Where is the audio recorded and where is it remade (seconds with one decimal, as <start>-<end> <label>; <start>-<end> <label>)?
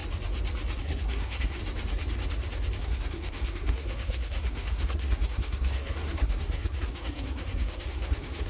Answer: 0.0-0.8 recorded; 0.8-1.6 remade; 1.6-2.8 recorded; 2.8-8.5 remade